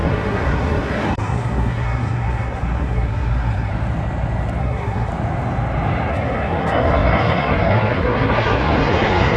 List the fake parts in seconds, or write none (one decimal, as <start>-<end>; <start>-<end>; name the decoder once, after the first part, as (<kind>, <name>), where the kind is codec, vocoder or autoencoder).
0.0-3.7 (codec, SNAC); 4.6-5.1; 6.1-9.4